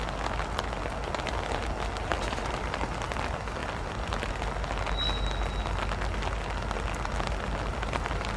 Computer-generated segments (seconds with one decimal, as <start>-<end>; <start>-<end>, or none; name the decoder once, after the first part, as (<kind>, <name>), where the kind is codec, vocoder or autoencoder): 2.1-3.2 (vocoder, BigVGAN v2); 3.6-4.3